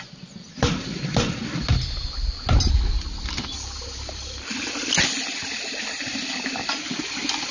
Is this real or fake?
real